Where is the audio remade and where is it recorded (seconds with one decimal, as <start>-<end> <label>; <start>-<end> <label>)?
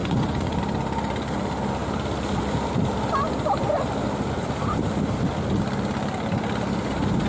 0.0-0.6 remade; 0.6-7.3 recorded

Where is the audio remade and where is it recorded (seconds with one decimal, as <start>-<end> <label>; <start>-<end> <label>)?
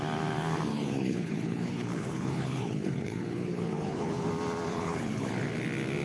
0.0-0.7 recorded; 0.7-4.3 remade; 4.3-4.7 recorded; 4.7-5.3 remade; 5.3-6.0 recorded